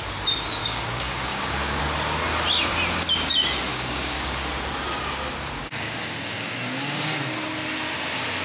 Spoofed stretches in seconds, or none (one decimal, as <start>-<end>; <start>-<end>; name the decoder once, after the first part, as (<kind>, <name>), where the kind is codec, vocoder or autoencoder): 0.6-1.8 (codec, DAC); 3.7-4.5; 5.6-6.5